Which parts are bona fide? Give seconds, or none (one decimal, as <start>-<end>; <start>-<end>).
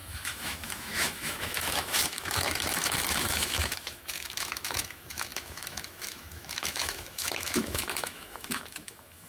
none